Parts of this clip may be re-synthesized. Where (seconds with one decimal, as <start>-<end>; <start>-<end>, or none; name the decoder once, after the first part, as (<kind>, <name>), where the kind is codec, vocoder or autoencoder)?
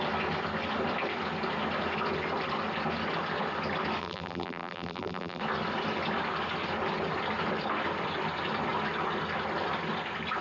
4.0-5.4 (vocoder, BigVGAN v2)